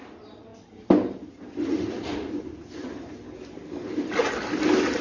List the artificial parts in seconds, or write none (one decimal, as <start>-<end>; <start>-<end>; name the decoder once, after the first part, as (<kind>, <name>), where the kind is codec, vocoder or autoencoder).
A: none